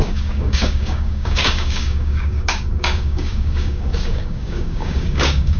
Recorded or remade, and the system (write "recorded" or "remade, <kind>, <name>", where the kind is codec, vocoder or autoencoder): remade, codec, DAC